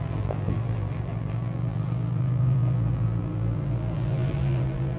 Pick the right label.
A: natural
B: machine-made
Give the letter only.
B